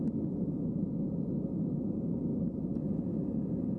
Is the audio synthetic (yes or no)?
no